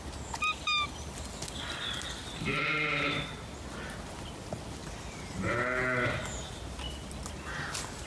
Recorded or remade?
recorded